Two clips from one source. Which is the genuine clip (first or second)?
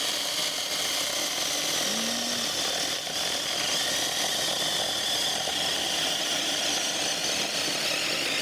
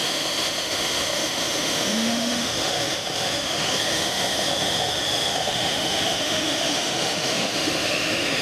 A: first